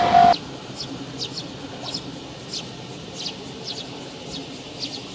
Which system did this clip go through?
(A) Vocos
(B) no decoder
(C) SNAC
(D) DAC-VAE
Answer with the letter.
B